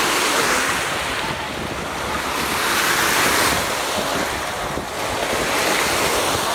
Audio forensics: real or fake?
real